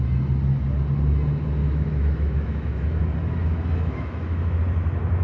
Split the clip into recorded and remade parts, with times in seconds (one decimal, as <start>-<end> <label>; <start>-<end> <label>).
0.0-1.6 recorded; 1.6-3.0 remade; 3.0-3.4 recorded; 3.4-4.6 remade; 4.6-5.2 recorded